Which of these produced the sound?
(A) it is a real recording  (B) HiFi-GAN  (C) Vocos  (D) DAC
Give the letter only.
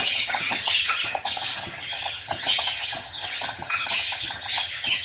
B